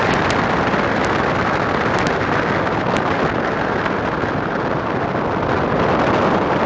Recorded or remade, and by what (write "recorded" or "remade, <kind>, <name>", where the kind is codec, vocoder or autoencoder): recorded